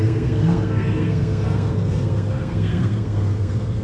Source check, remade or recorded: remade